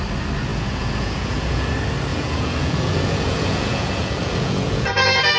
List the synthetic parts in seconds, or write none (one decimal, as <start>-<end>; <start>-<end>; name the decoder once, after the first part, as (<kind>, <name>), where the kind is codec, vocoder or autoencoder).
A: 0.5-1.7 (vocoder, Vocos); 2.1-5.4